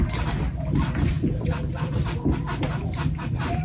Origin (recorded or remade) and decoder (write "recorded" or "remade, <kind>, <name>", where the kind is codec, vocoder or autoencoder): remade, vocoder, BigVGAN v2